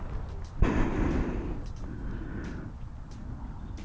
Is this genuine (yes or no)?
yes